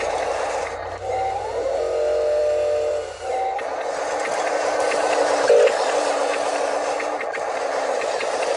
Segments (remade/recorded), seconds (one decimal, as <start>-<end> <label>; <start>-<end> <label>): 0.0-8.6 recorded